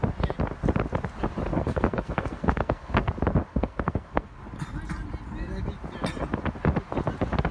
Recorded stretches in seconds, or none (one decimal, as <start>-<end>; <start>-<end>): 0.0-1.5; 3.1-3.5; 4.4-7.5